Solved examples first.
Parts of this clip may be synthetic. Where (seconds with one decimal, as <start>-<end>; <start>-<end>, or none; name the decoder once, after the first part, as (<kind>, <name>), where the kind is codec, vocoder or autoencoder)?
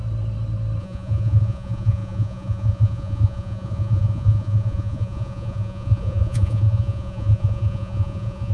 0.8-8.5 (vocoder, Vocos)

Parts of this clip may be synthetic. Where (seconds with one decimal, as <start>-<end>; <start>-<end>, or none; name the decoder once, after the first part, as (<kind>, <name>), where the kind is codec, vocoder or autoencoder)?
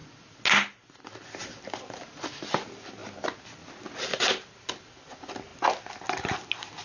none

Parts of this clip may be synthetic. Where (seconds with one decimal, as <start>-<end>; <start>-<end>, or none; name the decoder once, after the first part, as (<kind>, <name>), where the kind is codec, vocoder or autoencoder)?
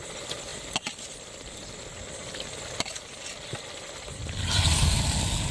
none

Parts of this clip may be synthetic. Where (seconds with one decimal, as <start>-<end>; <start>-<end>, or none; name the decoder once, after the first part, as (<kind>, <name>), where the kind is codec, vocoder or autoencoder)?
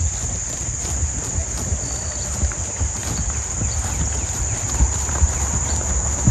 none